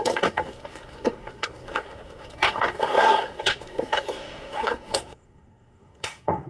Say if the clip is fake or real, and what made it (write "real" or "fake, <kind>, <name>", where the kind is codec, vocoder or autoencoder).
fake, codec, SNAC